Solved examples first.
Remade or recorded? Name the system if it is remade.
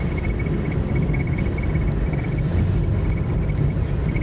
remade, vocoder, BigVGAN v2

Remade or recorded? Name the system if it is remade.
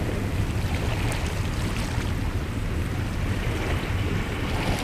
recorded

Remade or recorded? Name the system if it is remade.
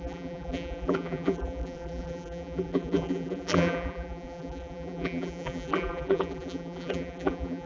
remade, vocoder, BigVGAN v2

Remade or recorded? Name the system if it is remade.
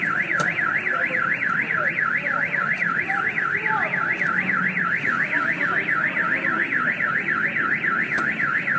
remade, vocoder, BigVGAN v2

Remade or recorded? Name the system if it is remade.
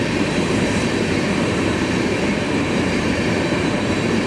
remade, vocoder, BigVGAN v2